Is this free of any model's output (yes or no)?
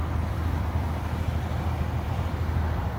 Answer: no